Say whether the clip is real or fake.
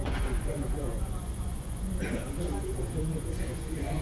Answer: fake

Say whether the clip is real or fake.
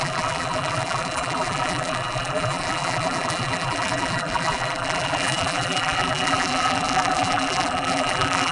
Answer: fake